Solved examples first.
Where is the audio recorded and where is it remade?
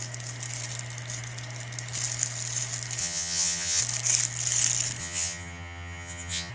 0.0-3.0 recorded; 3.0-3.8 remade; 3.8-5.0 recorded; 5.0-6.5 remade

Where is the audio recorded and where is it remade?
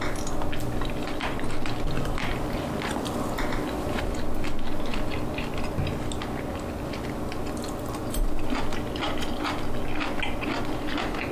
0.0-2.3 recorded; 2.3-4.0 remade; 4.0-11.3 recorded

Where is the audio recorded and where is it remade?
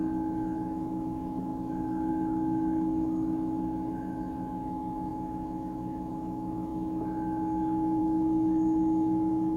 0.0-9.6 remade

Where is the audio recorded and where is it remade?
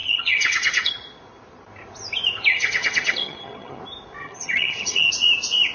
0.0-0.9 remade; 0.9-2.5 recorded; 2.5-3.8 remade; 3.8-4.2 recorded; 4.2-5.1 remade; 5.1-5.7 recorded